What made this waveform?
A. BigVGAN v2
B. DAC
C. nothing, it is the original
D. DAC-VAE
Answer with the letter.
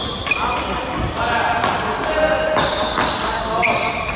C